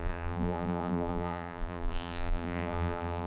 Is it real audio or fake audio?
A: fake